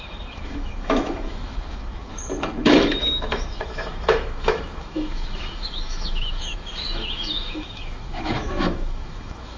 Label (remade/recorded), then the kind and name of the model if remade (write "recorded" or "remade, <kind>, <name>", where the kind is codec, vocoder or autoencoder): remade, autoencoder, DAC-VAE